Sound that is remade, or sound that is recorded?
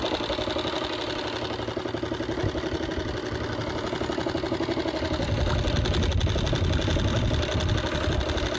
recorded